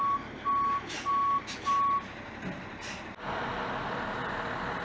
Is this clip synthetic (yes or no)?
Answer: no